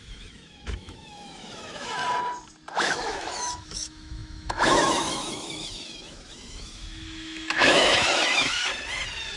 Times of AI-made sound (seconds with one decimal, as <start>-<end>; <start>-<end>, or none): 0.0-2.0; 2.7-8.7